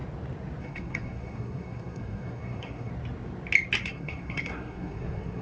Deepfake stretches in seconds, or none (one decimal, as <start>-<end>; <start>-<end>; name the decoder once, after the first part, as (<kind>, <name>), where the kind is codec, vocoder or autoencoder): 0.6-2.9 (codec, SNAC); 3.8-5.4